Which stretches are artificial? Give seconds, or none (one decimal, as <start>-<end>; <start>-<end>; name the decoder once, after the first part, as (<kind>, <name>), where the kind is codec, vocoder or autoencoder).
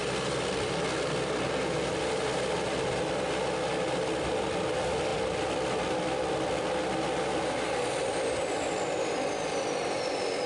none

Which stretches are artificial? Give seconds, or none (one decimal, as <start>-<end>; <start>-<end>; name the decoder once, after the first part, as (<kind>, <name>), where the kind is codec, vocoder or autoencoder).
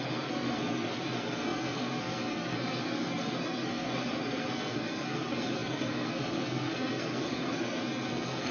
0.0-8.5 (codec, SNAC)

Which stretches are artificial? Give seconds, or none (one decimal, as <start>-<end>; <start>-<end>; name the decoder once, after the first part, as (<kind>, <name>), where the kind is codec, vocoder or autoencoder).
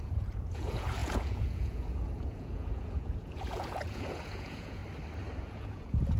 0.0-4.8 (vocoder, Vocos); 5.4-6.2